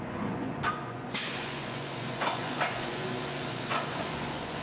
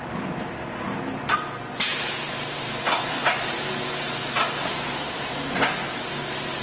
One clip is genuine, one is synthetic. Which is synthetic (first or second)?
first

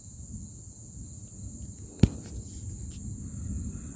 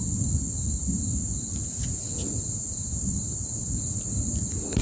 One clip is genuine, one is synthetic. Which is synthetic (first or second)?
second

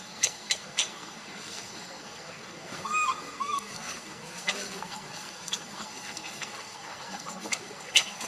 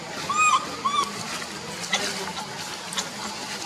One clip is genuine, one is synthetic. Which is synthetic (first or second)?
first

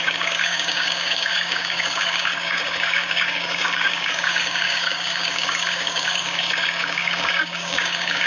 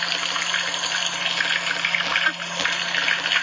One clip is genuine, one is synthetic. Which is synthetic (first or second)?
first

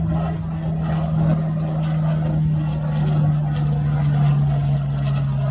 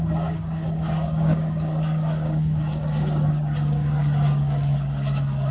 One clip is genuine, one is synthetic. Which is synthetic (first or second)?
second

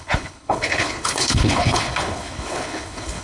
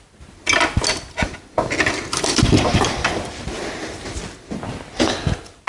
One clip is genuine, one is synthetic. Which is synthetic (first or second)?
first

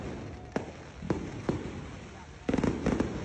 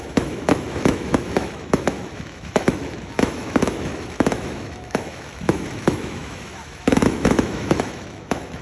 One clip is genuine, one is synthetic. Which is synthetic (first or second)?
second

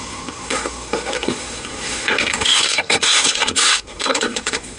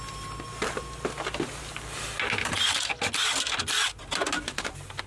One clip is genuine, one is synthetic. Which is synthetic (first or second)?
first